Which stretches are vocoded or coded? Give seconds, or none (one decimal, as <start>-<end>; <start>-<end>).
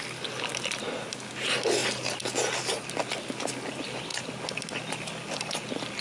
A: none